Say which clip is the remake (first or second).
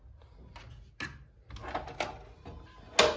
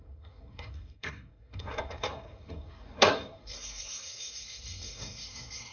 second